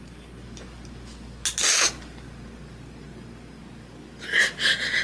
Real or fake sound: real